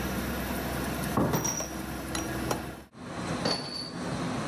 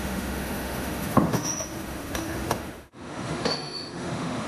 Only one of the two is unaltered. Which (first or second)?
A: first